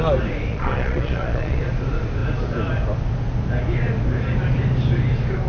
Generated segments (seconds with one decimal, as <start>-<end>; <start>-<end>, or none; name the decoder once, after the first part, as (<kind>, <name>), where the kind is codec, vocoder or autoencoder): 0.5-1.6 (vocoder, Vocos)